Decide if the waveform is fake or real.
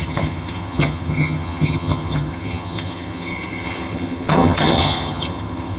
fake